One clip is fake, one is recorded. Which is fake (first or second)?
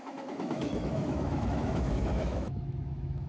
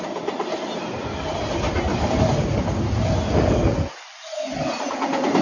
first